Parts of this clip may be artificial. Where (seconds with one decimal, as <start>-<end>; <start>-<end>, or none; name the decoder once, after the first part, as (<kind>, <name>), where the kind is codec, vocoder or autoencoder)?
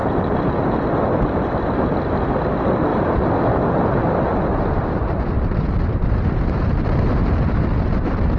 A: 2.9-6.6 (vocoder, BigVGAN v2)